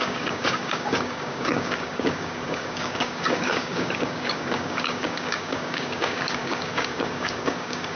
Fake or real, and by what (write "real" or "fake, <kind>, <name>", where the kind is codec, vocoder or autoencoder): fake, codec, DAC